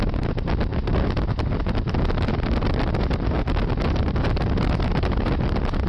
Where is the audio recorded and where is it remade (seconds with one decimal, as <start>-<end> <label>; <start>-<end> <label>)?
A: 0.0-5.9 recorded